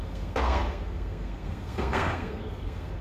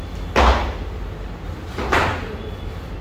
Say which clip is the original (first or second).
second